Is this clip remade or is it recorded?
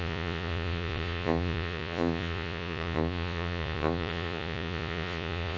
remade